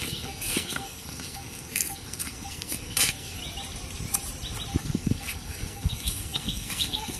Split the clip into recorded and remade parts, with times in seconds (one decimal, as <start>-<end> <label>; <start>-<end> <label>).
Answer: 0.0-3.4 remade; 3.4-4.8 recorded; 4.8-7.2 remade